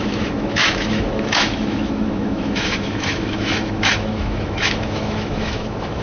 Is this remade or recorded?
remade